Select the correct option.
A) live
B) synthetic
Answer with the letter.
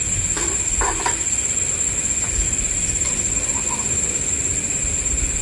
A